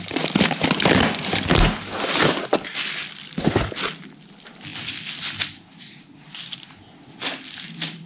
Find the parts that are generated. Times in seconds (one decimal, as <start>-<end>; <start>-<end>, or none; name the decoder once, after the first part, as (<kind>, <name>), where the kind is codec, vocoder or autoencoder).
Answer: none